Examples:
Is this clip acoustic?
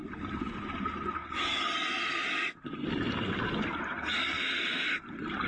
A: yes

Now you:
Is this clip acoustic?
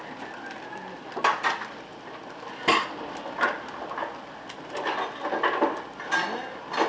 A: yes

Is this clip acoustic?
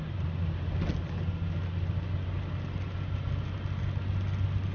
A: yes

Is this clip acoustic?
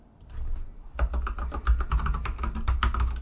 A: yes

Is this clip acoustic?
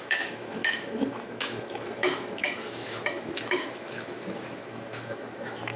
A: no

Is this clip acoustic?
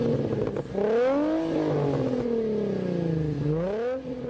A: yes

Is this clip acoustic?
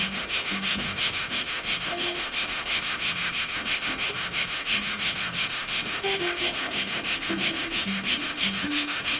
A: no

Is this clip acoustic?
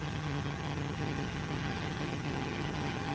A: no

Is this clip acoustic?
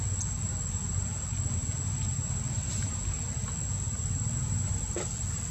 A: yes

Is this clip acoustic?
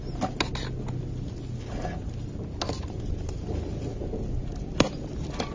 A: yes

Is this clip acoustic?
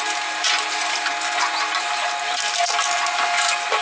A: yes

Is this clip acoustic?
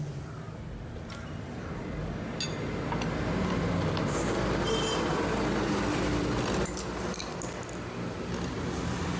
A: yes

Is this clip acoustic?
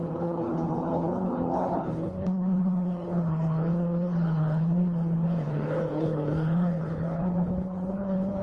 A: no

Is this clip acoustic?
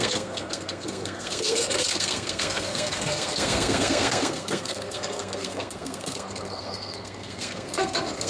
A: no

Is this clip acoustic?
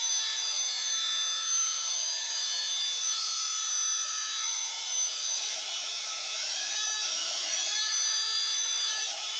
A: no